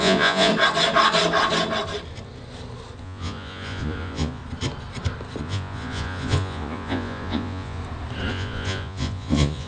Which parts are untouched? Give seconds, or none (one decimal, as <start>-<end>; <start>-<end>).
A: 0.5-3.0; 4.4-5.4; 7.8-8.3